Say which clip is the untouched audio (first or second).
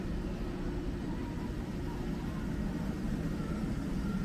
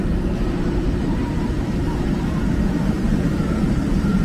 first